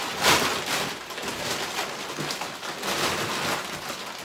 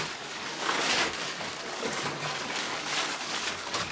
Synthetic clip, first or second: second